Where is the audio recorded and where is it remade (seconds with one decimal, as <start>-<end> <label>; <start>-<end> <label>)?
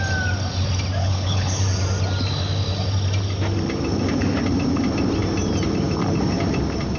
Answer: 0.0-1.0 recorded; 1.0-1.6 remade; 1.6-7.0 recorded